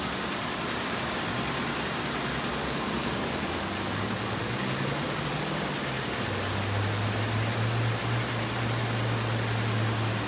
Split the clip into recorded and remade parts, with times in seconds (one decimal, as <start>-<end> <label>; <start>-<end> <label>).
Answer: 0.0-2.6 recorded; 2.6-5.2 remade; 5.2-10.3 recorded